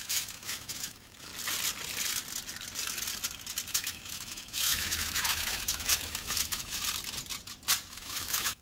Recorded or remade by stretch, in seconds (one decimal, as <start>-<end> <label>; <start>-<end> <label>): 0.0-1.3 remade; 1.3-3.7 recorded; 3.7-6.8 remade; 6.8-7.9 recorded; 7.9-8.6 remade